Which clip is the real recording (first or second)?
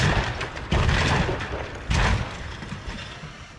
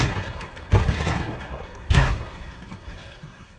first